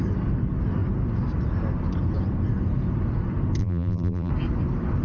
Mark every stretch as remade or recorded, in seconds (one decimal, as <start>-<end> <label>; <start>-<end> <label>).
0.0-3.6 recorded; 3.6-4.3 remade; 4.3-5.0 recorded